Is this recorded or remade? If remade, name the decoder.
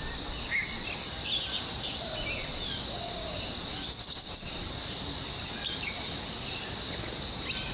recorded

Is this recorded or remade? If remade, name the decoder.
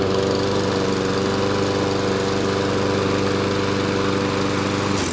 recorded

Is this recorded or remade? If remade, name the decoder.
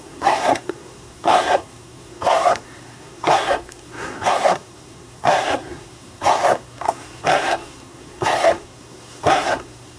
remade, codec, SNAC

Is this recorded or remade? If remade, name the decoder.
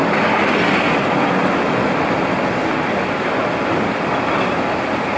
recorded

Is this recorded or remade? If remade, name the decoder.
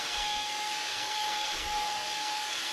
remade, codec, SNAC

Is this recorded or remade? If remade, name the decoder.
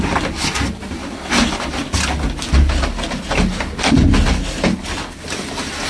recorded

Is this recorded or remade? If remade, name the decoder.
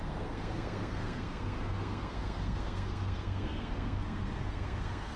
remade, codec, SNAC